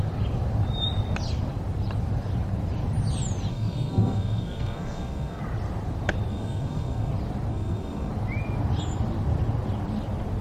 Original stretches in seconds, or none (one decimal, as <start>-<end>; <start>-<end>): 0.0-3.5; 5.4-6.3; 7.1-7.5; 8.1-10.4